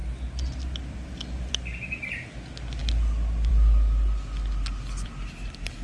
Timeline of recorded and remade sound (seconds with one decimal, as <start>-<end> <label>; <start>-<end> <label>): 0.0-2.1 remade; 2.1-5.8 recorded